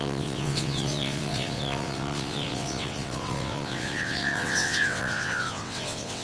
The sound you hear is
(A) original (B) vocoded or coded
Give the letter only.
B